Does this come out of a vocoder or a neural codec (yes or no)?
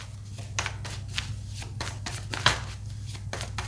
no